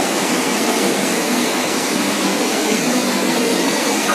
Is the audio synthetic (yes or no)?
yes